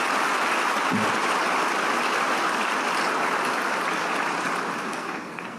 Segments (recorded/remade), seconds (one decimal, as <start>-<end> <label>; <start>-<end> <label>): 0.0-4.9 recorded; 4.9-5.6 remade